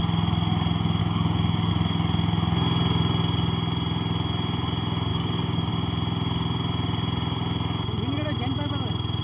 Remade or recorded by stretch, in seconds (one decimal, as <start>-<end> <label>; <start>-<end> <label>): 0.0-1.0 recorded; 1.0-1.7 remade; 1.7-5.1 recorded; 5.1-5.7 remade; 5.7-9.2 recorded